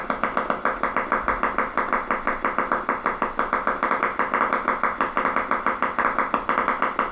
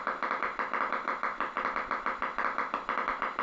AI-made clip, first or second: second